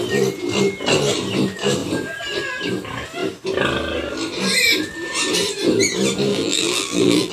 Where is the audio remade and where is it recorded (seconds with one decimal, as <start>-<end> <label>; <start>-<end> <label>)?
0.0-6.3 recorded; 6.3-7.3 remade